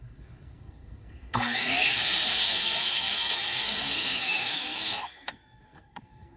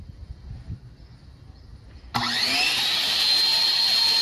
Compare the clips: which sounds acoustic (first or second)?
second